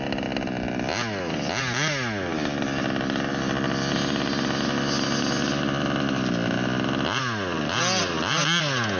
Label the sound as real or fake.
real